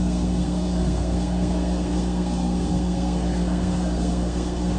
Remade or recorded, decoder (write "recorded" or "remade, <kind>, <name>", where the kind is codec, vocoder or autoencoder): remade, codec, SNAC